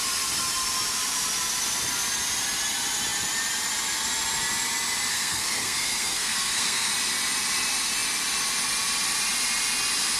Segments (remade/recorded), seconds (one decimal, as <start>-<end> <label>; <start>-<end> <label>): 0.0-5.1 recorded; 5.1-6.9 remade; 6.9-10.2 recorded